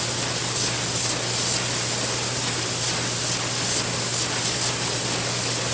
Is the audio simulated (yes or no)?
no